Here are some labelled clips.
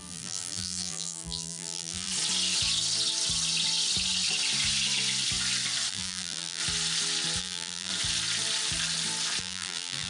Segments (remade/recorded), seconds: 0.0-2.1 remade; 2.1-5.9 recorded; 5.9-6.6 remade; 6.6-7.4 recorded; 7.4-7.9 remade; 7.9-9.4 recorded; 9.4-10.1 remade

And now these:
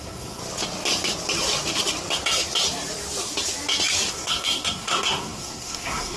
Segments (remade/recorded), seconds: 0.0-0.4 remade; 0.4-4.1 recorded; 4.1-6.2 remade

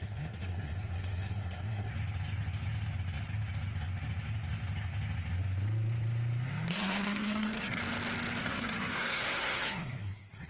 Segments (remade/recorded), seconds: 0.0-1.9 remade; 1.9-6.7 recorded; 6.7-7.8 remade; 7.8-8.4 recorded; 8.4-10.5 remade

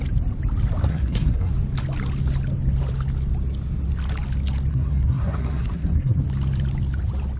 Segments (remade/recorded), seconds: 0.0-0.9 recorded; 0.9-1.5 remade; 1.5-4.7 recorded; 4.7-6.2 remade; 6.2-7.4 recorded